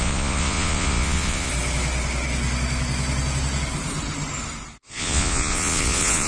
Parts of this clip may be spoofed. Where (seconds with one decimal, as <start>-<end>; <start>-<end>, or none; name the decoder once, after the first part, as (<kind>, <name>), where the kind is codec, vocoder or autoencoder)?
0.0-1.5 (vocoder, Vocos); 4.8-6.3